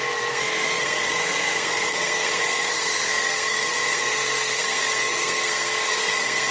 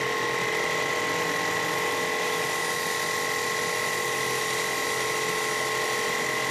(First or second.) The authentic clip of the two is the second